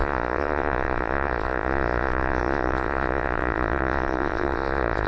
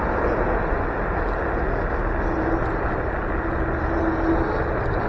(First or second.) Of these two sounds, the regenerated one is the first